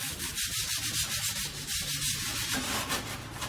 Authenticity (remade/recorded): recorded